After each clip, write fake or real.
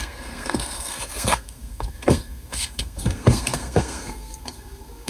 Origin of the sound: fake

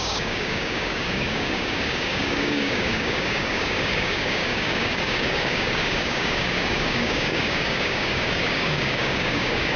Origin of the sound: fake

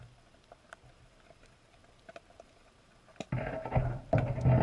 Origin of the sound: real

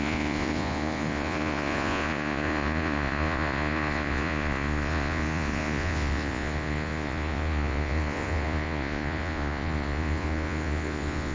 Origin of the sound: fake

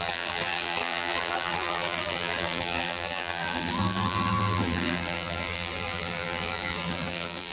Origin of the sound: fake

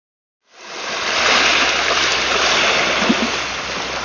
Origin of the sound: real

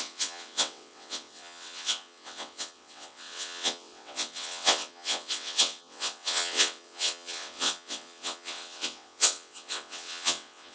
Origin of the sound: fake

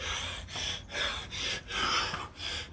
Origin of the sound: real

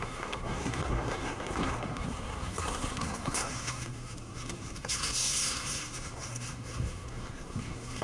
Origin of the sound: fake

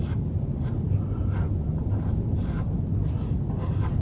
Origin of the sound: real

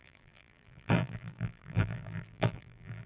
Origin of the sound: fake